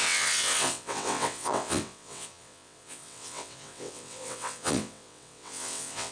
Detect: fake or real fake